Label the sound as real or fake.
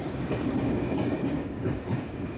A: fake